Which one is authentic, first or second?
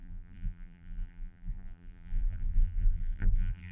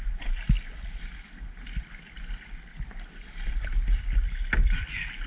second